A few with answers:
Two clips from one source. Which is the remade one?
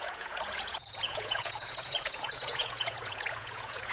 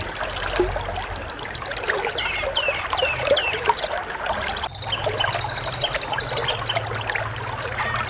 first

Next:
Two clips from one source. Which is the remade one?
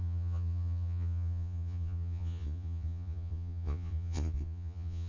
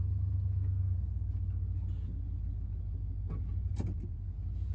first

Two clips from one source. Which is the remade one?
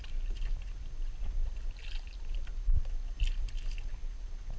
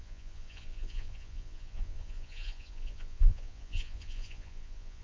second